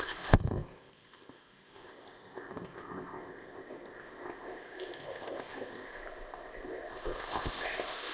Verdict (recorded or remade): remade